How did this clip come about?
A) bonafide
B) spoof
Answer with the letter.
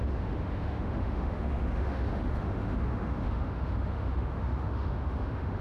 B